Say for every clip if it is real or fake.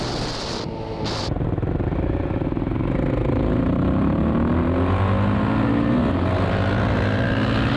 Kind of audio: real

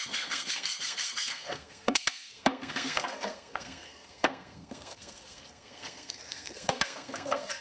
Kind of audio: fake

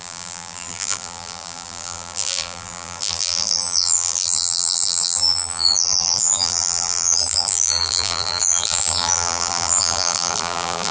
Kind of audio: fake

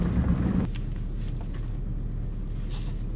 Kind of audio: real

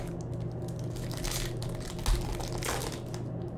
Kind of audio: real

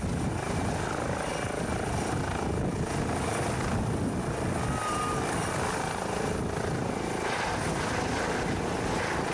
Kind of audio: real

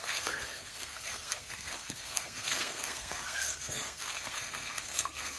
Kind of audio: fake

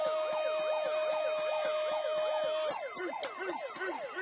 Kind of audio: real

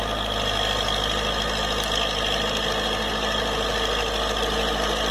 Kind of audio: real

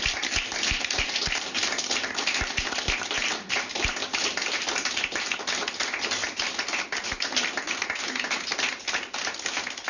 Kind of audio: real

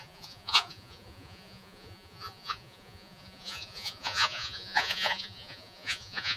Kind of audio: fake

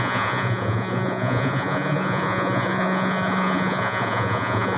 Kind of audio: fake